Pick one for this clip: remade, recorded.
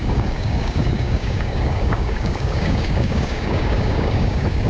remade